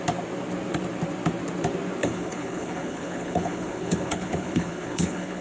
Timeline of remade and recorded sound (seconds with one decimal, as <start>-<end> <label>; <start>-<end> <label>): 0.0-2.0 recorded; 2.0-5.4 remade